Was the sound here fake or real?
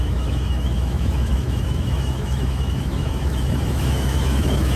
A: fake